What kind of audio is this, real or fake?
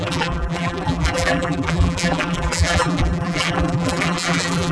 fake